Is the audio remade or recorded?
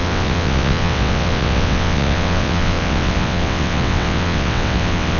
remade